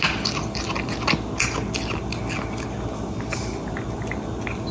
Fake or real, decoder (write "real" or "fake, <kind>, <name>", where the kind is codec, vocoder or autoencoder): real